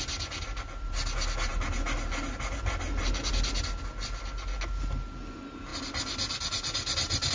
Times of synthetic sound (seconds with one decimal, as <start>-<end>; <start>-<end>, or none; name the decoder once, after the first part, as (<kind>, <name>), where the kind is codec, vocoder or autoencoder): none